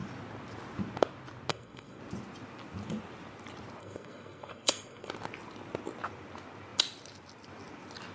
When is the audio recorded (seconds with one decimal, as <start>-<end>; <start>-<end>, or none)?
0.0-1.5; 2.0-3.8; 5.1-8.1